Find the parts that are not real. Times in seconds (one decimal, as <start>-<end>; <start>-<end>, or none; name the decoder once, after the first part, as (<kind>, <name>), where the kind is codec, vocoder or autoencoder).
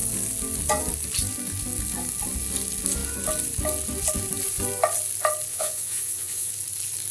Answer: 5.5-6.5 (vocoder, Vocos)